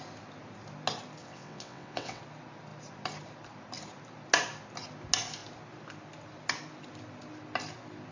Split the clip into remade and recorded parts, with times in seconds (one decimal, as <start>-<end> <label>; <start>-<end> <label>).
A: 0.0-1.2 recorded; 1.2-2.2 remade; 2.2-8.1 recorded